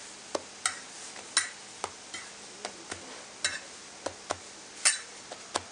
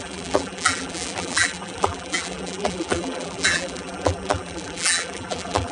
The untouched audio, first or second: first